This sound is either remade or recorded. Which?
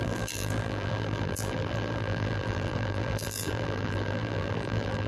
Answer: remade